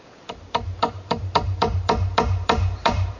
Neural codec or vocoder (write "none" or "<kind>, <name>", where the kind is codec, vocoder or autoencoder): vocoder, BigVGAN v2